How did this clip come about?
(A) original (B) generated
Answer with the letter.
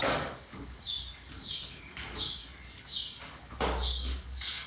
B